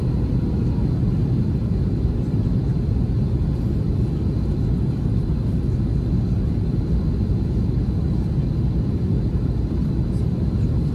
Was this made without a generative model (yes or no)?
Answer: yes